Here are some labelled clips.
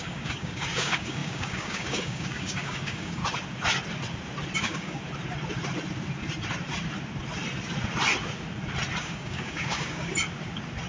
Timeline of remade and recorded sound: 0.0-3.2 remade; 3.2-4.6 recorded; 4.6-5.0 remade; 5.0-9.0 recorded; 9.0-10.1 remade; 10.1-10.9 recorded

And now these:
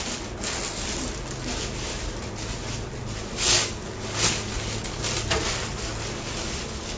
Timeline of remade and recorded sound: 0.0-7.0 recorded